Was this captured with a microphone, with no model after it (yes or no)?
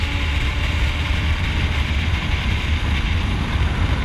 yes